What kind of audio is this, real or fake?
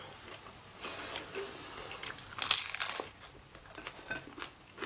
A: real